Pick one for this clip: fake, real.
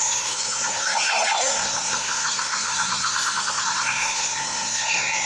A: fake